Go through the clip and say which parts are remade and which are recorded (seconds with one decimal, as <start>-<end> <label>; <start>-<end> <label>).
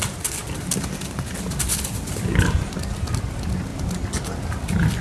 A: 0.0-5.0 recorded